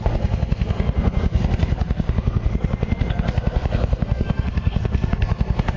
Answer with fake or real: fake